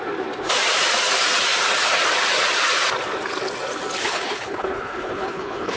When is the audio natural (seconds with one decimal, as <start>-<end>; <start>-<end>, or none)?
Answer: 0.0-4.0